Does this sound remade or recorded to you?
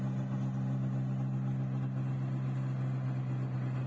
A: recorded